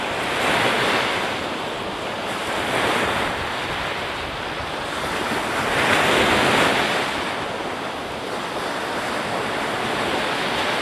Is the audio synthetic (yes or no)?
no